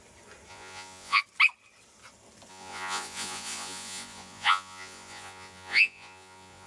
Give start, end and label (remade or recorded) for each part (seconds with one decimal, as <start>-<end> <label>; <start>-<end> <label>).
0.0-0.5 recorded; 0.5-1.2 remade; 1.2-2.5 recorded; 2.5-6.7 remade